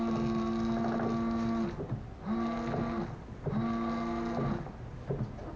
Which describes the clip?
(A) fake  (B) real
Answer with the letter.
B